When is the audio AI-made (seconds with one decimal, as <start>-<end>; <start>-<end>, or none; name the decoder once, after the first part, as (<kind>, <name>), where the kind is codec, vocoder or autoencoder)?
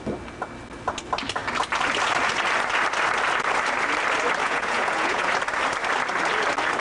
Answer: 4.4-5.3 (vocoder, Vocos)